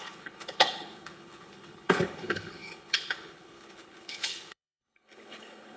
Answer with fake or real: fake